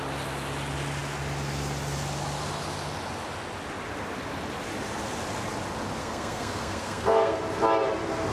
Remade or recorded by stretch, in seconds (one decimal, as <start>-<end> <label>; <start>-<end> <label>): 0.0-6.0 recorded; 6.0-7.4 remade; 7.4-8.3 recorded